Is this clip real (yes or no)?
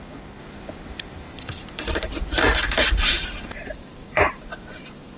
no